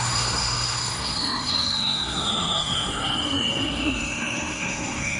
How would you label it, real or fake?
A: fake